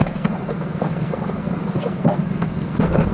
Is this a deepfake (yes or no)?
yes